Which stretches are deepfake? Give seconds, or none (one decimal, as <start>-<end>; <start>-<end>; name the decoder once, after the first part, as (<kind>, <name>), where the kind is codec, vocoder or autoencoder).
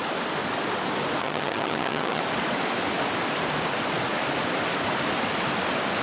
1.2-2.2 (vocoder, HiFi-GAN)